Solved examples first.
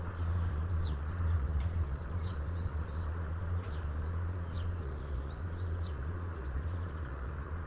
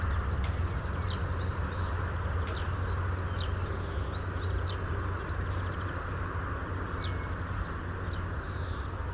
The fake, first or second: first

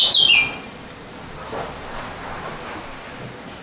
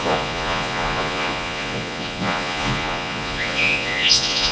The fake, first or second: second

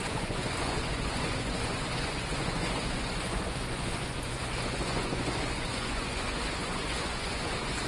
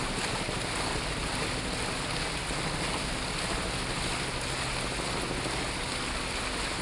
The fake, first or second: first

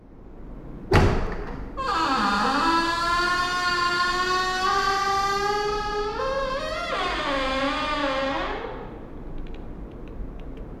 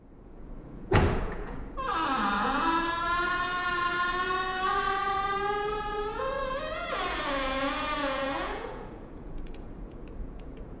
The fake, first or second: second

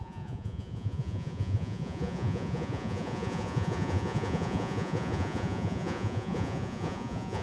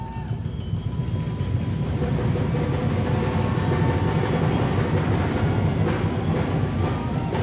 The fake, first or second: first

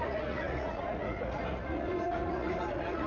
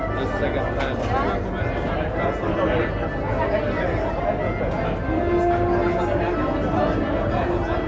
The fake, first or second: first